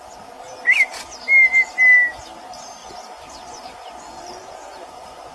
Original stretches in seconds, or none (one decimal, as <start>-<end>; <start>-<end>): 0.0-2.8